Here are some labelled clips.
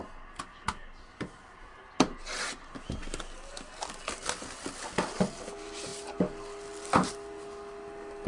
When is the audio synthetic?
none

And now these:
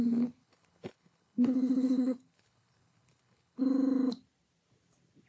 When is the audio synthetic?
0.4-3.6 (codec, HILCodec)

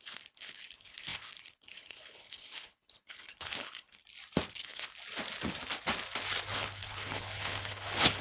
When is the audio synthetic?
0.0-4.0 (codec, HILCodec); 4.5-4.9; 6.5-8.2

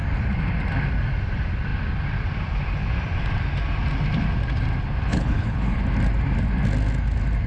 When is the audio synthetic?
5.1-5.8 (codec, HILCodec)

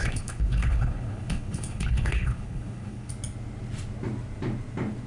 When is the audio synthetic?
0.0-3.1 (codec, HILCodec)